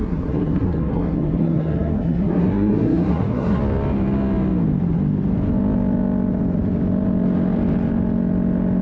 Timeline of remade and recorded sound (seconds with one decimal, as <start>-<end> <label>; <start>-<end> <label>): 0.0-3.6 remade; 3.6-8.8 recorded